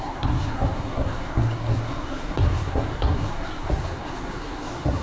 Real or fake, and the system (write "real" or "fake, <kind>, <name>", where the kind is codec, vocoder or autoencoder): fake, codec, SNAC